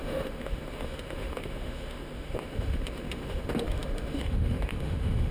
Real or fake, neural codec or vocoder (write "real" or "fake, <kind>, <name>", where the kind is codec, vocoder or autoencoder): fake, autoencoder, DAC-VAE